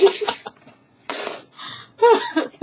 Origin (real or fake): fake